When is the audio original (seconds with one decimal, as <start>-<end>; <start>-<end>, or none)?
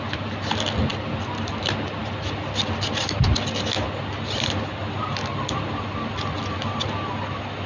0.0-7.7